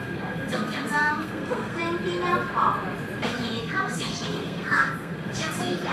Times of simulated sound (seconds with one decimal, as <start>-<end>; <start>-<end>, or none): 0.0-1.8; 3.2-5.9